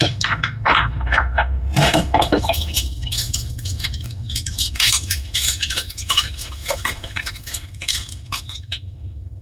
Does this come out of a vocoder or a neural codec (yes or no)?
yes